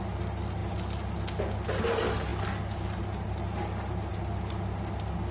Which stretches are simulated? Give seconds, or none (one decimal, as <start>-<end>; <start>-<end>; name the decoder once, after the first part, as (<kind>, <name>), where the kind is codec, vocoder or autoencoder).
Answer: none